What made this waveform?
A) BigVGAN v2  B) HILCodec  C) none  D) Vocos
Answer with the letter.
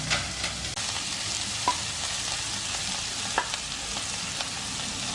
C